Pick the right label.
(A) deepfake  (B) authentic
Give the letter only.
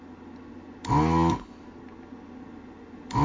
B